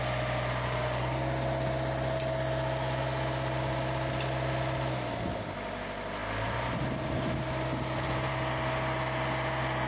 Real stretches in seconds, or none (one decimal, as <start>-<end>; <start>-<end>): 0.0-9.9